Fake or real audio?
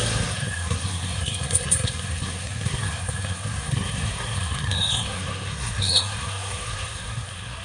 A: fake